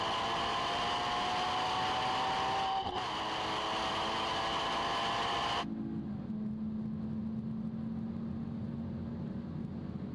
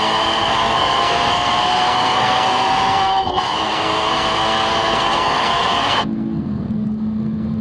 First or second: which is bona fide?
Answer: first